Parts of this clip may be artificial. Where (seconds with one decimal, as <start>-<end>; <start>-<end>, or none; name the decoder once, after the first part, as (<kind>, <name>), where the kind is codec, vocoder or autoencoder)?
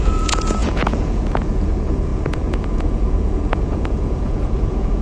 0.0-5.0 (vocoder, Vocos)